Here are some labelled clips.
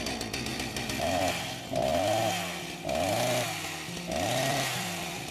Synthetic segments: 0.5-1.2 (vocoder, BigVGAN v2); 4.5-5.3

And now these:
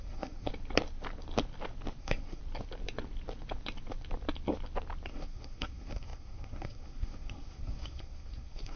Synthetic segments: 0.0-0.5 (codec, SNAC); 2.0-2.4; 5.1-8.8

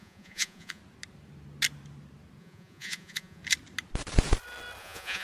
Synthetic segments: 0.0-0.8 (vocoder, Vocos); 2.4-3.4; 4.8-5.2

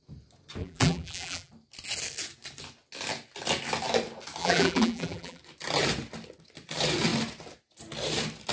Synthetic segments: 0.6-1.5 (vocoder, BigVGAN v2); 4.4-5.4

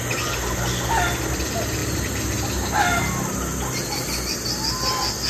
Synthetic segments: none